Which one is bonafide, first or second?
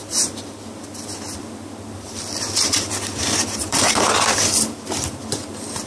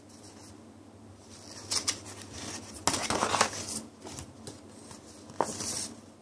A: second